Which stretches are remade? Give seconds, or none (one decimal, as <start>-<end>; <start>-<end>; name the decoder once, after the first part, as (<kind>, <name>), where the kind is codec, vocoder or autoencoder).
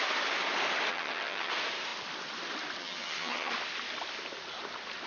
0.9-1.5 (vocoder, HiFi-GAN); 2.8-3.5